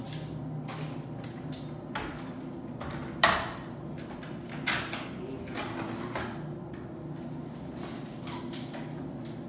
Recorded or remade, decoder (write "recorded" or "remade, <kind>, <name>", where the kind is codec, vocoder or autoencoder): recorded